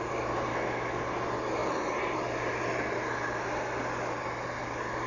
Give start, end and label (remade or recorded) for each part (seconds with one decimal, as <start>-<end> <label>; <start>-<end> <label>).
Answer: 0.0-0.5 recorded; 0.5-1.0 remade; 1.0-5.1 recorded